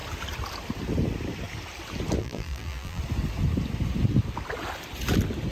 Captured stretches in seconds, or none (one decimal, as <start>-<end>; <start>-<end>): 0.0-2.2; 3.0-5.5